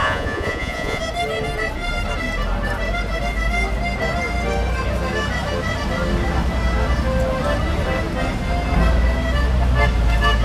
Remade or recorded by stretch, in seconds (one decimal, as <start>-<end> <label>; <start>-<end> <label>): 0.0-1.0 remade; 1.0-10.4 recorded